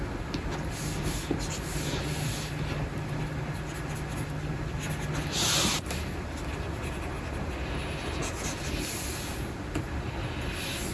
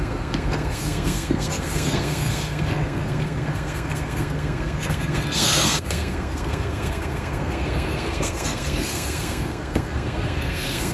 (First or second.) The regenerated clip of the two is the second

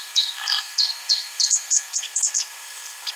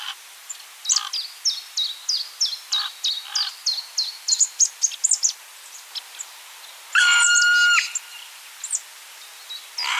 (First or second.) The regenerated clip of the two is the first